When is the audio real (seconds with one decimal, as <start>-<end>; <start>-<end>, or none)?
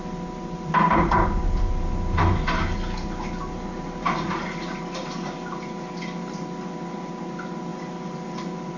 0.0-8.8